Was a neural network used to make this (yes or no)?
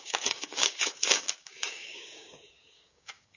yes